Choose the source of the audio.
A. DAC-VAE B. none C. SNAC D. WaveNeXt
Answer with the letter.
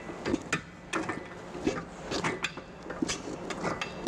B